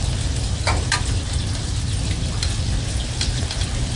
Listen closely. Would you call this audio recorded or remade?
recorded